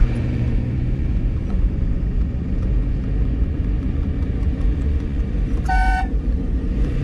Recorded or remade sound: remade